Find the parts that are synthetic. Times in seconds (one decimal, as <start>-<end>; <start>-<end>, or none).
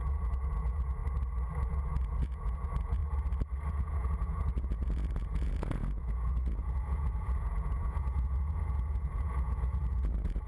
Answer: 0.0-1.0; 1.7-3.0; 3.7-10.5